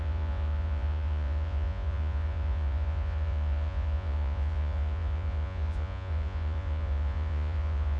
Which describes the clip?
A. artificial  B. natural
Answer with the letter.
A